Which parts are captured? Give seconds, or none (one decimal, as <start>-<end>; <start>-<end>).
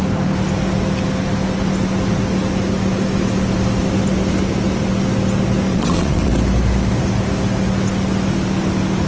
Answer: 0.0-5.7; 6.3-9.1